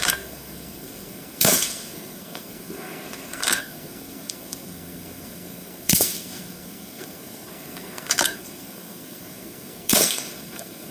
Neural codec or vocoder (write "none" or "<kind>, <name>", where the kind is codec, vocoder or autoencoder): codec, SNAC